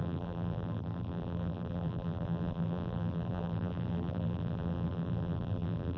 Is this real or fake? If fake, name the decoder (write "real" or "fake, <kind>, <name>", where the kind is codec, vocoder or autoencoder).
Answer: fake, vocoder, BigVGAN v2